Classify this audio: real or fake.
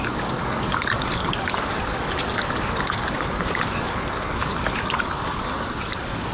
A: fake